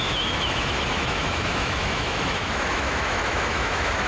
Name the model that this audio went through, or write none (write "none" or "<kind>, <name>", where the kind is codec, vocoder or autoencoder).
autoencoder, DAC-VAE